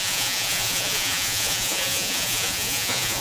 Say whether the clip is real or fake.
fake